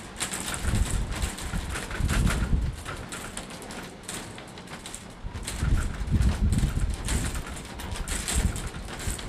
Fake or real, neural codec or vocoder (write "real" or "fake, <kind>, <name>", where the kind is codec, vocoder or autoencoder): real